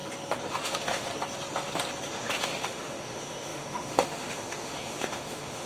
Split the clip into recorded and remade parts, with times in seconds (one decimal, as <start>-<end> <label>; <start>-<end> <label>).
0.0-0.5 recorded; 0.5-1.1 remade; 1.1-2.1 recorded; 2.1-5.7 remade